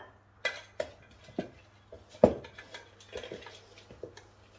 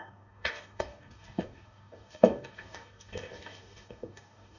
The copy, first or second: second